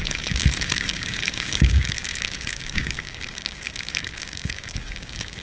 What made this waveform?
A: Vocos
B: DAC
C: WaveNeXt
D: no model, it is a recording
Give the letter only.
B